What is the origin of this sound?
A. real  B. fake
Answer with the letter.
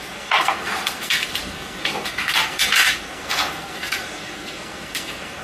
B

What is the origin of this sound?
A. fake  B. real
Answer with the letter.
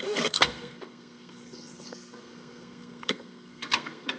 A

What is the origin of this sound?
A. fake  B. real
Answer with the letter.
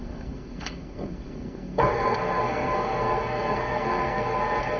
A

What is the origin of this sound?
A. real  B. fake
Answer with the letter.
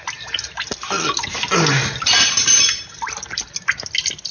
A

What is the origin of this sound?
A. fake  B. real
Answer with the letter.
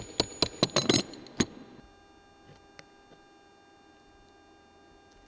B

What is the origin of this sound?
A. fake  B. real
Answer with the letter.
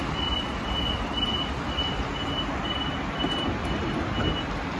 B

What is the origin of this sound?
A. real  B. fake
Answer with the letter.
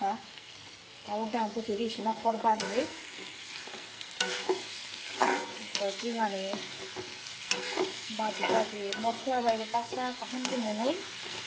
B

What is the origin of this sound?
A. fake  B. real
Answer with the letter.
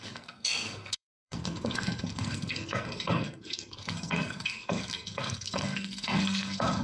A